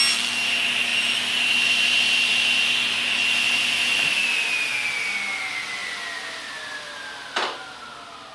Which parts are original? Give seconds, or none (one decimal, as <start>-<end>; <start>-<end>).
0.0-8.3